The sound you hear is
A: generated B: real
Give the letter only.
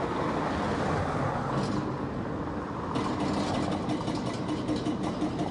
B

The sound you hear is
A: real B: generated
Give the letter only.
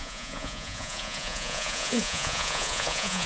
B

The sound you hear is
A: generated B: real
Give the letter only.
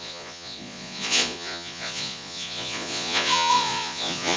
A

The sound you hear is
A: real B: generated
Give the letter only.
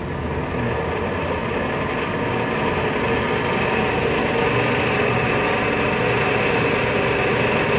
A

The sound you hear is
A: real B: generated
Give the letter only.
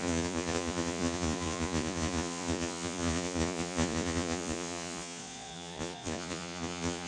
B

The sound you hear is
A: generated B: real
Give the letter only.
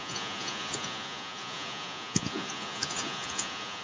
A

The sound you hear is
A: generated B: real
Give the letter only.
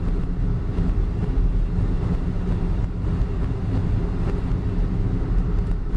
B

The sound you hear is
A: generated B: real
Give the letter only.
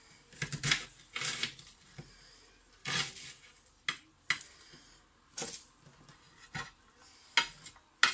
B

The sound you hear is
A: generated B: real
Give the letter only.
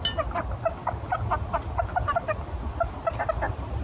B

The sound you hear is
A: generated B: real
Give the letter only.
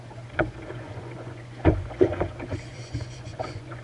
A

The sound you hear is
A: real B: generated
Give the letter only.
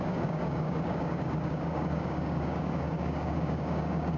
B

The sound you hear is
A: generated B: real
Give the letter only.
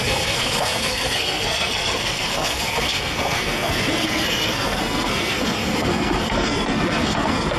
A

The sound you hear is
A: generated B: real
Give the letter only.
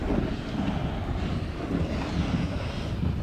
B